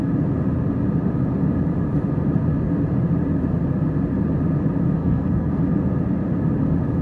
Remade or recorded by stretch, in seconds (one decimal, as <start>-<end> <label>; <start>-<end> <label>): 0.0-5.0 recorded; 5.0-5.6 remade; 5.6-7.0 recorded